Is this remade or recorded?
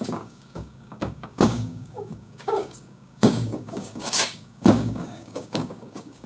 remade